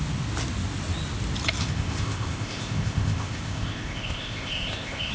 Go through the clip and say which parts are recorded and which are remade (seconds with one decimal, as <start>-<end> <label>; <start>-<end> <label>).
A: 0.0-1.6 recorded; 1.6-5.1 remade